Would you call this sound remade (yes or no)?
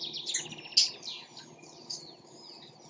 no